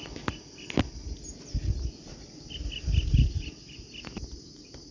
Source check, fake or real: real